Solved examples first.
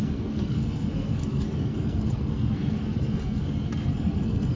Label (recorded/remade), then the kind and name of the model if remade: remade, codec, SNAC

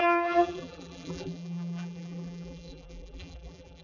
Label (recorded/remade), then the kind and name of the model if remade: remade, vocoder, BigVGAN v2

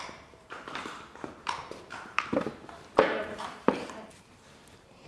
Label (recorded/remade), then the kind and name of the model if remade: remade, vocoder, BigVGAN v2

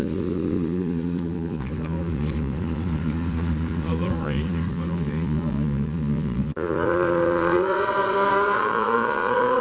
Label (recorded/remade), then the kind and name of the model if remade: remade, vocoder, Vocos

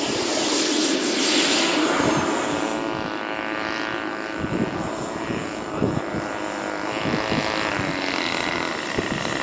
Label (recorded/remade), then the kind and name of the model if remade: recorded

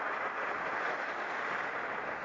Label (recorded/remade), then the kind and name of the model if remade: recorded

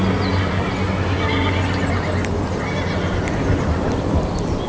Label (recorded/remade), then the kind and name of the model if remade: recorded